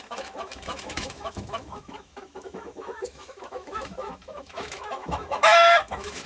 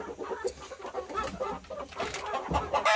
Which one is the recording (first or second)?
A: second